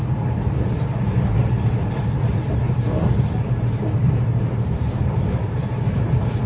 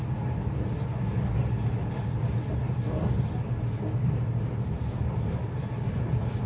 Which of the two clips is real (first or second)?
second